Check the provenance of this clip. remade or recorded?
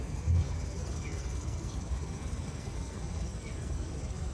remade